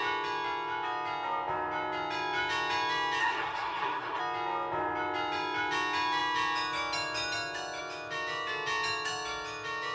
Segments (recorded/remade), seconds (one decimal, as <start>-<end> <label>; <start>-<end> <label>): 0.0-3.2 recorded; 3.2-4.2 remade; 4.2-9.9 recorded